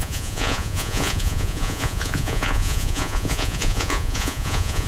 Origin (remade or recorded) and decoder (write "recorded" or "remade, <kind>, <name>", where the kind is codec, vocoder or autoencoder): remade, vocoder, Vocos